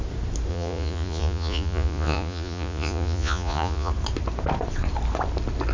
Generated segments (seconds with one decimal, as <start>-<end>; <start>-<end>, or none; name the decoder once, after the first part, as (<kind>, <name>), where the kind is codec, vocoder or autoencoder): 0.5-3.9 (vocoder, Vocos)